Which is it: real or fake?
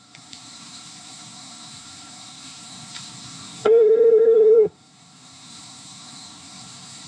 fake